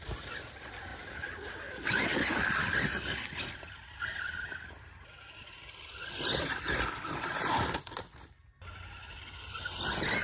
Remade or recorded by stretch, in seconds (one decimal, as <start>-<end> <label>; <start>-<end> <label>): 0.0-10.2 recorded